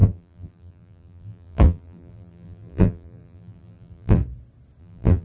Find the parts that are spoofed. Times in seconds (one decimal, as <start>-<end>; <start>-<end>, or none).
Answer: 0.0-4.2; 4.8-5.2